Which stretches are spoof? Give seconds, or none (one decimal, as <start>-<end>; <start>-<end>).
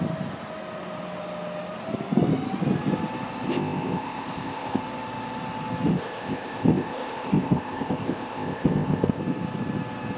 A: 3.5-4.8; 5.9-9.2